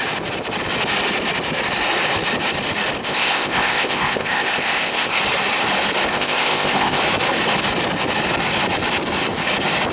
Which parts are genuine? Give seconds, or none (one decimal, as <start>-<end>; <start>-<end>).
0.0-3.0; 5.2-6.1; 7.0-9.9